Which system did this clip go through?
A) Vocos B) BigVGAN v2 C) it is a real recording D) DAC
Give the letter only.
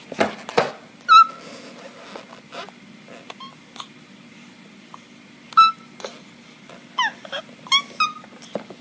C